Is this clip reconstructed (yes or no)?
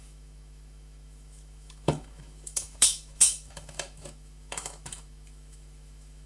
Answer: yes